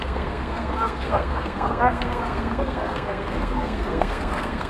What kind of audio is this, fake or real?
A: fake